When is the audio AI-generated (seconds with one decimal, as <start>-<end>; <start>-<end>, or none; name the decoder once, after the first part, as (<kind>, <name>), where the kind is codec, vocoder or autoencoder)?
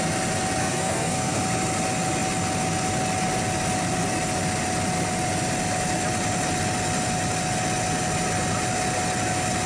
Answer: 0.6-1.4 (codec, SNAC)